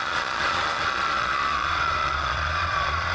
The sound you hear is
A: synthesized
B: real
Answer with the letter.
A